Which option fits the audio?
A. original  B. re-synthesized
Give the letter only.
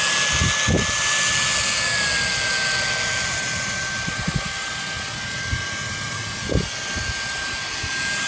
A